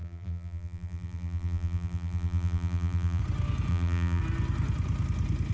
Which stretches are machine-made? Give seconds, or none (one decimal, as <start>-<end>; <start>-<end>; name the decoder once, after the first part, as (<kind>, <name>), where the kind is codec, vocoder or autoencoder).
0.0-3.2 (vocoder, BigVGAN v2); 3.7-4.2